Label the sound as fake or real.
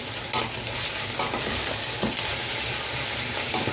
real